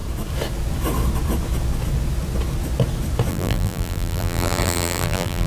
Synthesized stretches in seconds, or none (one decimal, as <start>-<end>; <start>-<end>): 3.3-5.5